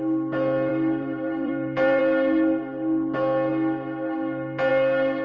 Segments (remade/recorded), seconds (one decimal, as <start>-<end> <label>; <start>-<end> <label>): 0.0-0.7 recorded; 0.7-2.0 remade; 2.0-5.2 recorded